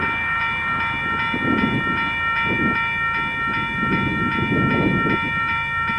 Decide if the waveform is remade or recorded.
recorded